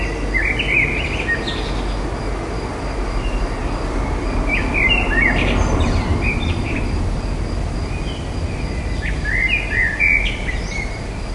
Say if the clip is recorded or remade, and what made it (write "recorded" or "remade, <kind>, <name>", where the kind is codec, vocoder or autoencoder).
recorded